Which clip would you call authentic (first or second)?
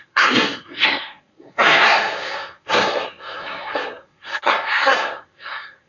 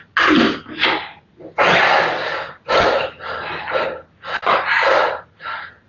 second